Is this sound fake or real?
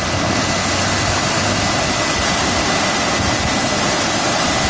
real